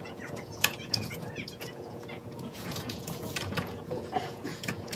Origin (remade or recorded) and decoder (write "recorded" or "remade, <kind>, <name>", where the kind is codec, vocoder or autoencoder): remade, vocoder, Vocos